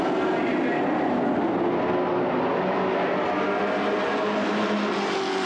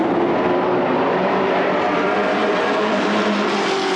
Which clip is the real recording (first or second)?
first